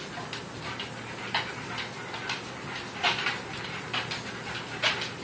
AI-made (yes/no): no